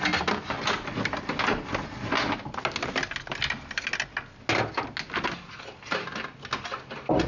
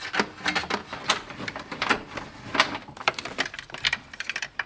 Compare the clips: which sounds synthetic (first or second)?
second